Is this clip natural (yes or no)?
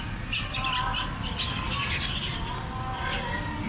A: yes